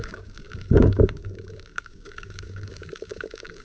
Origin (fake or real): fake